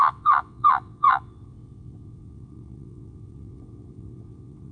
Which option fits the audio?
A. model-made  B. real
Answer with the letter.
A